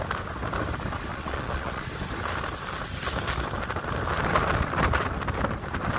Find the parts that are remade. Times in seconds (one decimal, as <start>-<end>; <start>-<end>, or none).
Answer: 1.1-1.9